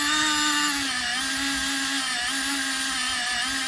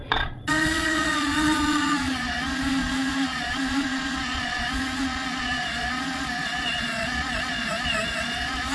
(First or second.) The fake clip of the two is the second